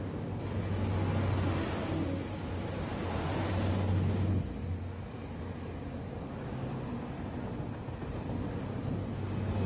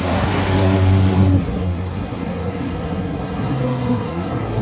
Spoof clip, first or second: second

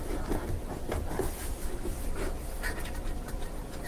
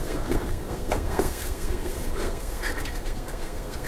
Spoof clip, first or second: second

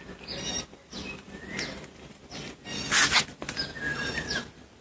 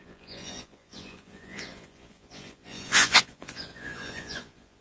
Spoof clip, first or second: second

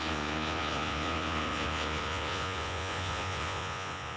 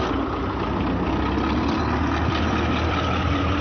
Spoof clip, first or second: first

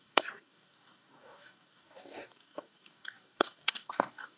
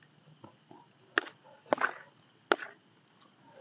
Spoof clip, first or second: first